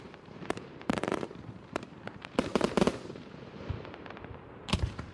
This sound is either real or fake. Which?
fake